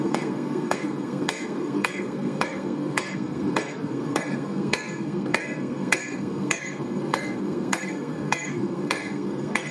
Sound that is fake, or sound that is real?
fake